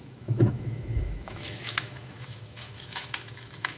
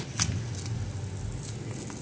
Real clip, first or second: second